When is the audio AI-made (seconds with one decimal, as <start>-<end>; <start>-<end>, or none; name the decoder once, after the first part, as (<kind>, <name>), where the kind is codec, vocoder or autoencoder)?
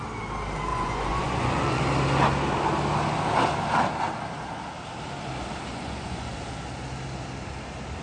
0.7-1.8 (vocoder, Vocos); 5.7-6.3